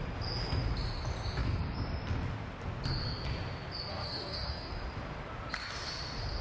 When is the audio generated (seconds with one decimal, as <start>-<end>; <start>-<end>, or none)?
3.9-4.7